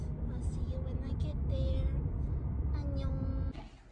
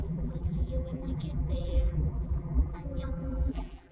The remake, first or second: second